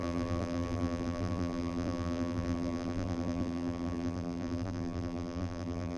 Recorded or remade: remade